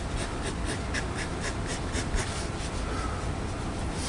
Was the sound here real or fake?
real